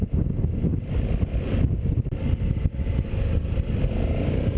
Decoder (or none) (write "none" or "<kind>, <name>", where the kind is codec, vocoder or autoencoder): none